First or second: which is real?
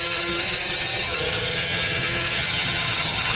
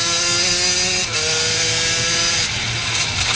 second